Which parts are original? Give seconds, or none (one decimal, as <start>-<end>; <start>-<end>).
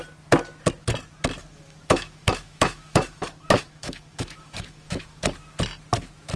0.0-1.4; 5.2-6.4